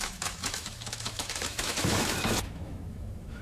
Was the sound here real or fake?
fake